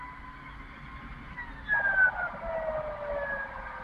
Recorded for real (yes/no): yes